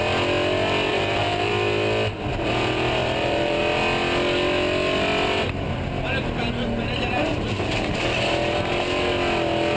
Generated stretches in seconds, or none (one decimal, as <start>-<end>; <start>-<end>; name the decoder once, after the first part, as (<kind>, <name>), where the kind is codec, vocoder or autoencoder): 0.9-1.5 (vocoder, BigVGAN v2); 3.0-3.6